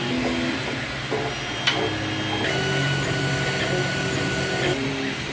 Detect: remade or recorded recorded